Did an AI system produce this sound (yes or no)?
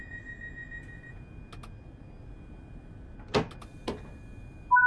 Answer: no